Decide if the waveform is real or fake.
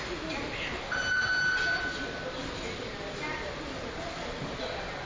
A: real